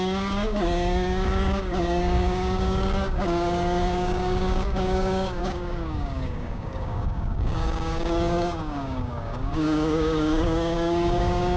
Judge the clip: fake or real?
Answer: fake